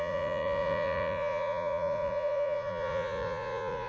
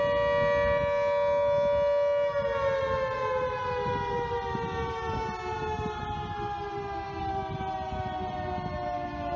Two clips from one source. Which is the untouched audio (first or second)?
second